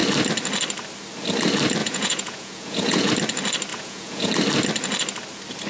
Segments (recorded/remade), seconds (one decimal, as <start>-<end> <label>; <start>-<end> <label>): 0.0-1.8 recorded; 1.8-3.1 remade; 3.1-3.7 recorded; 3.7-4.3 remade; 4.3-5.7 recorded